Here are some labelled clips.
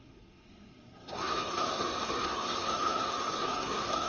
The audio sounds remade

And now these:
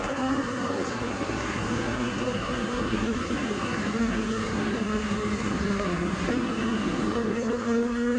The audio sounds remade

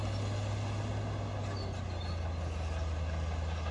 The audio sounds recorded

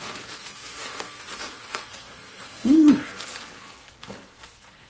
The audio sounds remade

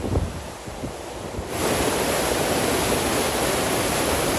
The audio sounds recorded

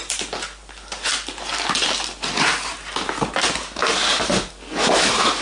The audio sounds recorded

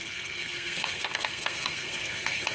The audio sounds remade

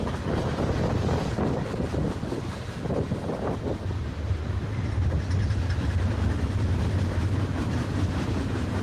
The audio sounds recorded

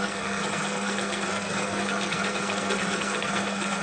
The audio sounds remade